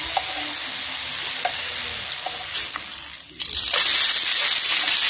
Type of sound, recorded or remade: recorded